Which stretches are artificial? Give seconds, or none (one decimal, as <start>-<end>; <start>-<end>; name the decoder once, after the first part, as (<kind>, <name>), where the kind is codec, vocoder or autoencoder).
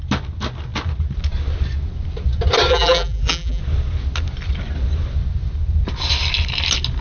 2.7-3.6 (vocoder, BigVGAN v2)